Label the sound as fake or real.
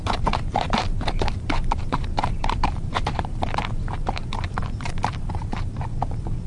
fake